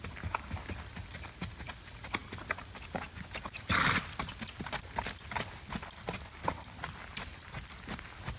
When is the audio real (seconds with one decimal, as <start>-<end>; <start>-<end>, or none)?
0.0-8.4